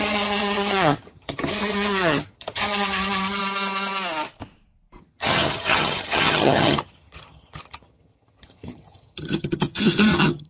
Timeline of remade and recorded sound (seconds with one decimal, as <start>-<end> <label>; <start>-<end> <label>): 0.0-3.4 remade; 3.4-5.0 recorded; 5.0-10.5 remade